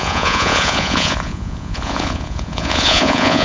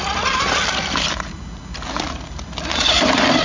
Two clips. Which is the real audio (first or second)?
second